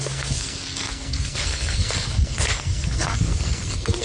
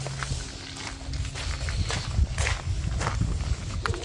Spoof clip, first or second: first